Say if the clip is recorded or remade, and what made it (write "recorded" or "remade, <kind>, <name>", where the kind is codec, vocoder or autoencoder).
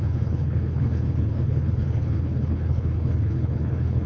remade, codec, HILCodec